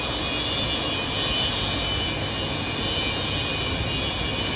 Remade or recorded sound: recorded